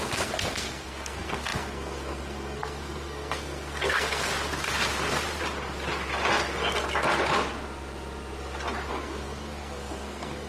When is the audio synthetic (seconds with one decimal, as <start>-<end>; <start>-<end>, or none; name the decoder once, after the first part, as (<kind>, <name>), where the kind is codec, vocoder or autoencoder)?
0.0-4.3 (codec, SNAC); 8.9-10.5